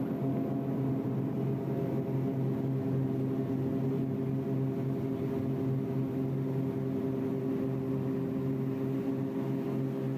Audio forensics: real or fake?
real